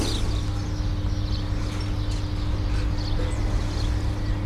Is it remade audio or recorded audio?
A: recorded